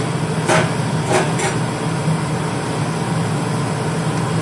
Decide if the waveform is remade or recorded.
recorded